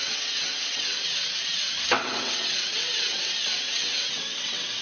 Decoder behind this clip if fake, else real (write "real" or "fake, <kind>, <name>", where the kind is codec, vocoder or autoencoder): fake, vocoder, WaveNeXt